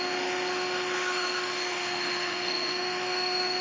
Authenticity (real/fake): fake